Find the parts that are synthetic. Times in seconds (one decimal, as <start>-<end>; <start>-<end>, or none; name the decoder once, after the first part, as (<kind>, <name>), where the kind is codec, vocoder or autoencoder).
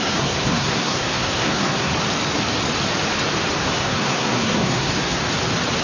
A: 0.0-1.9 (codec, SNAC); 3.6-5.2